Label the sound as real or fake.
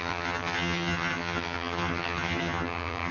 fake